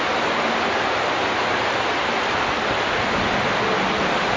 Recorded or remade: recorded